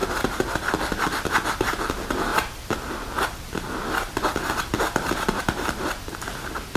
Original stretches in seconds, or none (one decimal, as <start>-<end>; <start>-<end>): 0.0-6.8